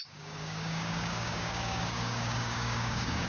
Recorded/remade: remade